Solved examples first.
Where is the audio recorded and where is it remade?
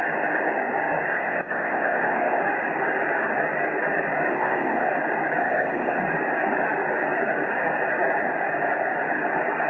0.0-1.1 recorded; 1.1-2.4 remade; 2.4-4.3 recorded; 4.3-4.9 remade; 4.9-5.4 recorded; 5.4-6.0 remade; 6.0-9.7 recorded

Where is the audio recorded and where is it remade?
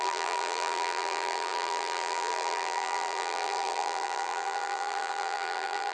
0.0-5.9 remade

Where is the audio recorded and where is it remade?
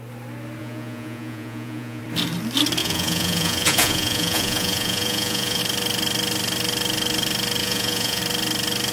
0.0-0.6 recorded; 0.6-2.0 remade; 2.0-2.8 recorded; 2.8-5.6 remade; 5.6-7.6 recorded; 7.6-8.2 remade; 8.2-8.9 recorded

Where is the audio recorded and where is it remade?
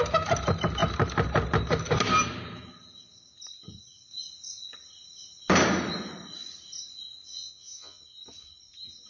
0.0-7.3 recorded; 7.3-8.0 remade; 8.0-9.1 recorded